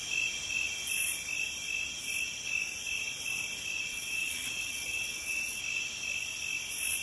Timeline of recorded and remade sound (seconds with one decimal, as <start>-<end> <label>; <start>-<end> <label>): 0.0-3.9 recorded; 3.9-5.6 remade; 5.6-7.0 recorded